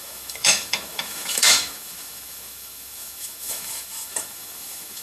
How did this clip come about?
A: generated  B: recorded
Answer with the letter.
A